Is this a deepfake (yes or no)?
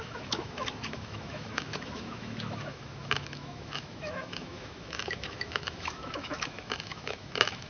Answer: yes